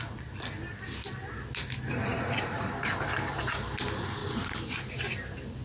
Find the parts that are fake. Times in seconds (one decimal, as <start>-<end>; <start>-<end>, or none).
2.1-3.4; 4.2-4.8